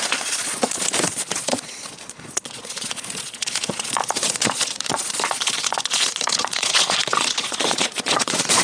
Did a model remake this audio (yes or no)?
yes